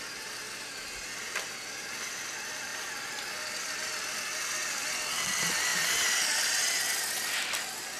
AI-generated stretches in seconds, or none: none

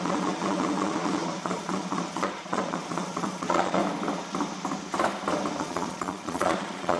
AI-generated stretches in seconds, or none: 0.0-3.8; 5.6-7.0

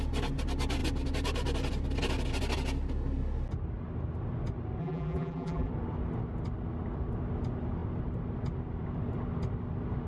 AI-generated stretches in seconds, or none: 4.8-5.7

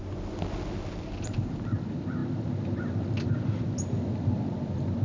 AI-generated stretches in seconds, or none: none

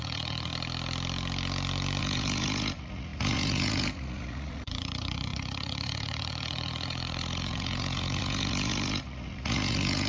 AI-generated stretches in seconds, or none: 0.0-0.5; 2.0-10.1

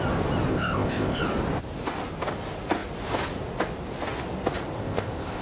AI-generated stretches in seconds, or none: 0.5-1.2; 4.8-5.4

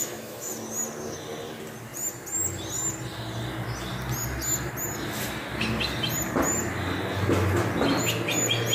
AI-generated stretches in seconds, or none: 0.0-0.5